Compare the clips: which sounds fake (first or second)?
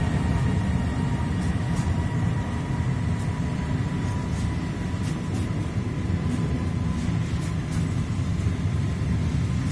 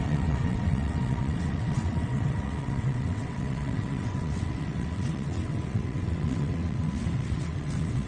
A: second